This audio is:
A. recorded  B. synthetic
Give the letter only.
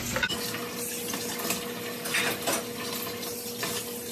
A